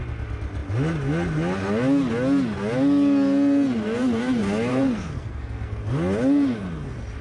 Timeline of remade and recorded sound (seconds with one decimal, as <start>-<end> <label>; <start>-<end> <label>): 0.0-4.7 recorded; 4.7-5.8 remade; 5.8-7.2 recorded

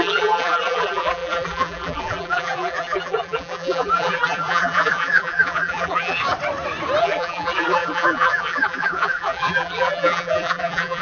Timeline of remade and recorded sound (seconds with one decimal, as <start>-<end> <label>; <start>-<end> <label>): 0.0-6.2 remade; 6.2-7.0 recorded; 7.0-11.0 remade

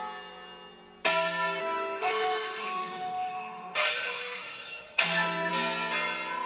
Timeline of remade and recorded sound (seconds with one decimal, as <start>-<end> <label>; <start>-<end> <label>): 0.0-1.6 recorded; 1.6-5.5 remade; 5.5-6.5 recorded

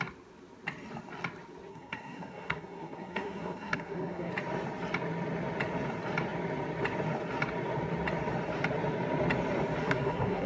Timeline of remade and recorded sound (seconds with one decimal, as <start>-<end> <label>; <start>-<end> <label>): 0.0-1.7 recorded; 1.7-4.3 remade; 4.3-9.8 recorded; 9.8-10.5 remade

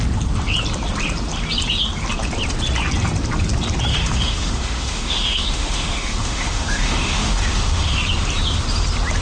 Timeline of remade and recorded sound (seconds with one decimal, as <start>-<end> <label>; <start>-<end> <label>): 0.0-3.9 recorded; 3.9-8.0 remade; 8.0-9.2 recorded